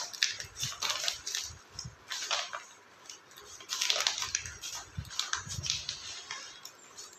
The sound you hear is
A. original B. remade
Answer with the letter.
A